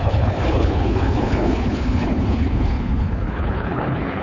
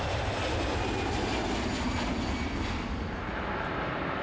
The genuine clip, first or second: second